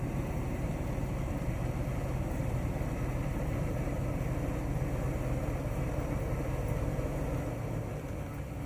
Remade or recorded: recorded